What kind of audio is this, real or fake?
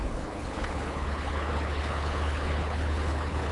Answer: fake